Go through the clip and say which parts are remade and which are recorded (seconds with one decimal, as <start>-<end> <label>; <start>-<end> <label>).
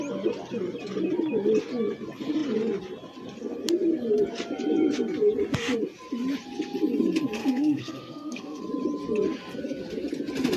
0.0-7.4 recorded; 7.4-8.6 remade; 8.6-10.6 recorded